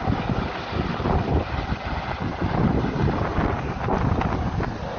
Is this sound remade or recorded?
recorded